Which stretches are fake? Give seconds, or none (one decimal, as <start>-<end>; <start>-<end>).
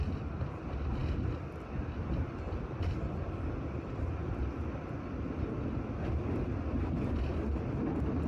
none